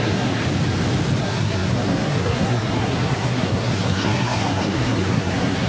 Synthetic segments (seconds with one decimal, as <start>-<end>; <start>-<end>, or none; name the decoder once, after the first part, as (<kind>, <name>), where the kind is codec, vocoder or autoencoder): 0.0-0.4 (codec, SNAC); 1.2-5.7